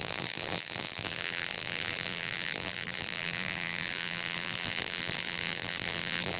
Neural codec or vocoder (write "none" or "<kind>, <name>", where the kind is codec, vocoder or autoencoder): vocoder, BigVGAN v2